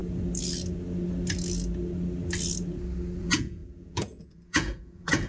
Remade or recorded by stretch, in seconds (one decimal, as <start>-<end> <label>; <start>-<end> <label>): 0.0-3.2 recorded; 3.2-5.3 remade